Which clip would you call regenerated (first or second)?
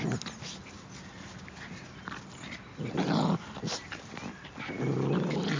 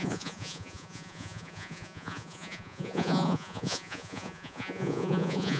second